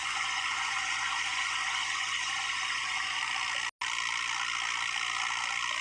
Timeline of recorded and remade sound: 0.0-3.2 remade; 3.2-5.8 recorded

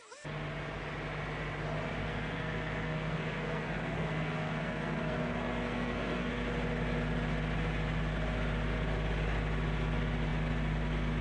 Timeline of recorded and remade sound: 0.0-2.0 recorded; 2.0-6.3 remade; 6.3-11.2 recorded

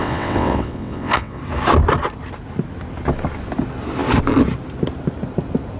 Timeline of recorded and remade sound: 0.0-1.4 remade; 1.4-5.8 recorded

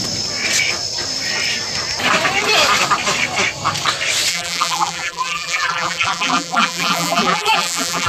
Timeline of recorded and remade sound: 0.0-4.3 recorded; 4.3-8.1 remade

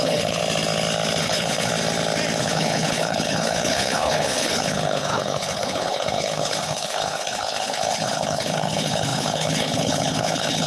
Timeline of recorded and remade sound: 0.0-0.4 remade; 0.4-1.2 recorded; 1.2-1.7 remade; 1.7-2.4 recorded; 2.4-10.7 remade